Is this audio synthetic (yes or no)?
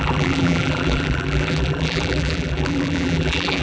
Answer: yes